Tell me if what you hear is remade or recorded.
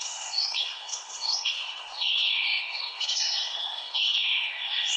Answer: remade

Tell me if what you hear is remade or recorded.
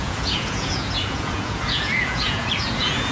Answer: remade